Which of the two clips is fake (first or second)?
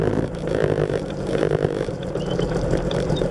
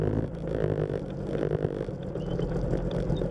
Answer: first